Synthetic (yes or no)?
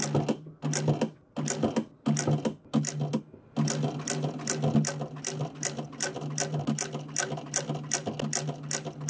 no